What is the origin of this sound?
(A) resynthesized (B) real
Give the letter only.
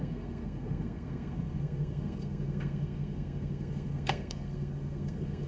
A